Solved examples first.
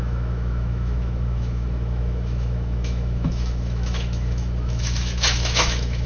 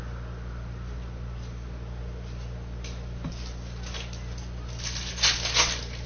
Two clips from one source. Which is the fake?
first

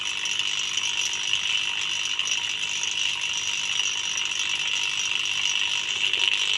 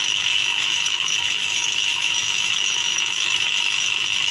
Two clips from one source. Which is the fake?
second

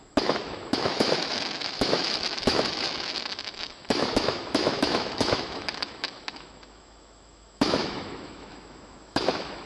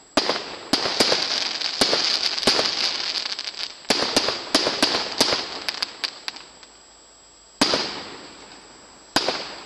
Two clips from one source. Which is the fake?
first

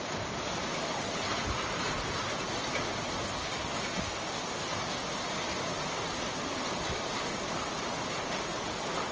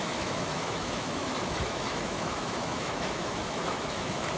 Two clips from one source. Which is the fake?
second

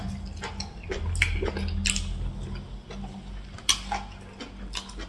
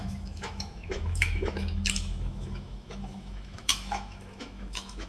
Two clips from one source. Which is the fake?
second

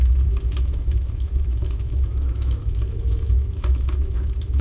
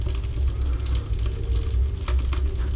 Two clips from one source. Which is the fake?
first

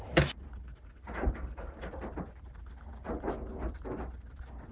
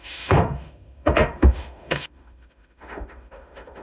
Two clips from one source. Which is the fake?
second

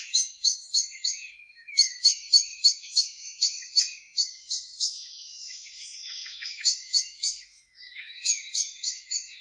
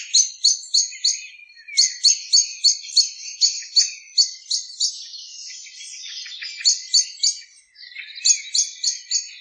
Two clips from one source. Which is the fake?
first